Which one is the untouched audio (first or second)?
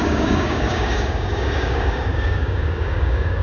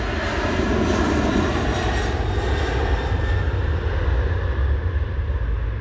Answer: second